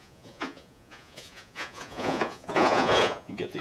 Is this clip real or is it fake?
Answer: fake